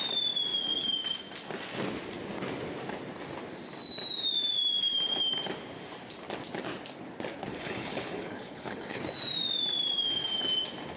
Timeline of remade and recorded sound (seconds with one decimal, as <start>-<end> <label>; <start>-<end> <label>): 0.0-7.5 recorded; 7.5-9.0 remade; 9.0-11.0 recorded